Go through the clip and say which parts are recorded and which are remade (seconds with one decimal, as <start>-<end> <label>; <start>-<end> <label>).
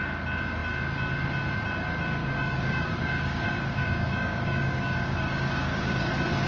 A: 0.0-2.2 recorded; 2.2-6.1 remade; 6.1-6.5 recorded